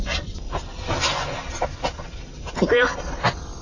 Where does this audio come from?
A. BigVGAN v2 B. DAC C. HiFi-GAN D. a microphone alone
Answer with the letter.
D